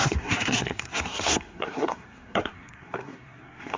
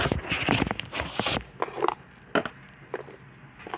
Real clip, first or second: second